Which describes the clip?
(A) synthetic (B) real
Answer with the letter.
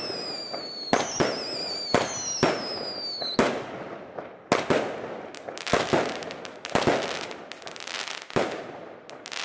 B